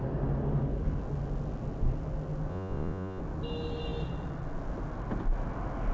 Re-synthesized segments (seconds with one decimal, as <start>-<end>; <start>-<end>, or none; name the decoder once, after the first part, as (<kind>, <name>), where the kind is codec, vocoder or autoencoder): 2.5-3.2 (vocoder, Vocos)